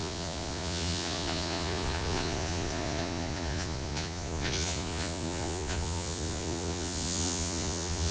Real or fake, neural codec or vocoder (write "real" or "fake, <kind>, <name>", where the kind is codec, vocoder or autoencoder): fake, vocoder, Vocos